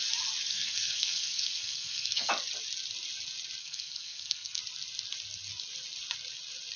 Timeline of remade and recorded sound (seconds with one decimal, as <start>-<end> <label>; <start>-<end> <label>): 0.0-0.5 recorded; 0.5-2.3 remade; 2.3-3.6 recorded; 3.6-4.6 remade; 4.6-6.8 recorded